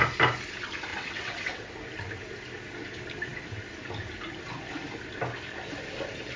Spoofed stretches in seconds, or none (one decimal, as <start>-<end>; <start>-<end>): 0.9-1.7